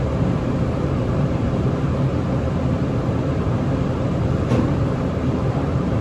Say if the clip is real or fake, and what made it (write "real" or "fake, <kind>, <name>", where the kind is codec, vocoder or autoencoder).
fake, vocoder, BigVGAN v2